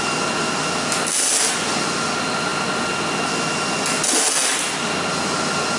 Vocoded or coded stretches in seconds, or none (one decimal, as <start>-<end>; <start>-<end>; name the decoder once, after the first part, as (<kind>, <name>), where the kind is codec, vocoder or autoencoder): none